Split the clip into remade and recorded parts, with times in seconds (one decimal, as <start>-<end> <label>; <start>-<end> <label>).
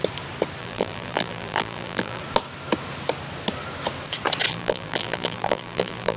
0.0-0.6 recorded; 0.6-2.2 remade; 2.2-4.5 recorded; 4.5-6.2 remade